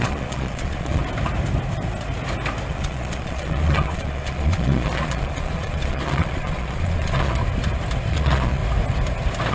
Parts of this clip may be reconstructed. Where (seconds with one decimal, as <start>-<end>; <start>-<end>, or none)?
0.0-1.0; 2.7-7.4; 8.1-8.6